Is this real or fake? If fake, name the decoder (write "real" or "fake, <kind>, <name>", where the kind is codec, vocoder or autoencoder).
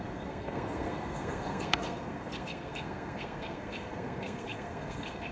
fake, codec, SNAC